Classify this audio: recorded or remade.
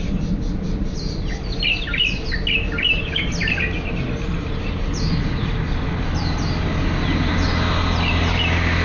recorded